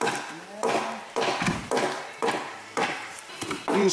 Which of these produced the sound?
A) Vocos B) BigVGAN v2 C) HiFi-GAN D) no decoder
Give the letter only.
B